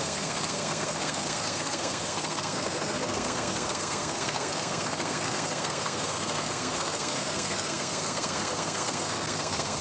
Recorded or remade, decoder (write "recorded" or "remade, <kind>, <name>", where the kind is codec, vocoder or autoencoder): remade, codec, SNAC